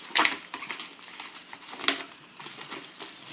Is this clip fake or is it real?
real